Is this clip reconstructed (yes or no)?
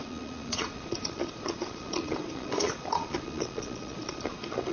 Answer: yes